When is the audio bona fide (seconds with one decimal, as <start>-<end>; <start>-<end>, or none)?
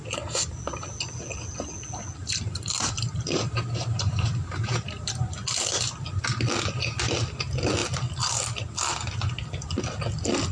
0.0-2.2; 5.2-10.5